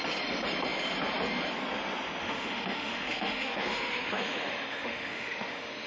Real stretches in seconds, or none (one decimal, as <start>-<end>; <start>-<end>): 0.0-2.2